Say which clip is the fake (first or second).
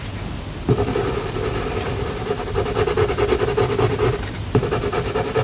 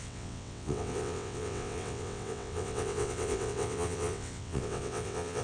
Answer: second